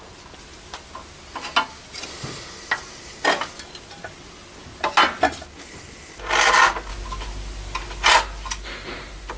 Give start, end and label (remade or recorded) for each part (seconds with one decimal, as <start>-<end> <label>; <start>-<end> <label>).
0.0-9.4 recorded